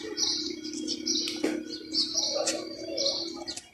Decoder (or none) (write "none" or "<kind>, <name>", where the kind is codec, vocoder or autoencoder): none